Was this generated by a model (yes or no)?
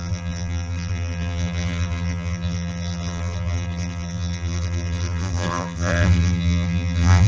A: yes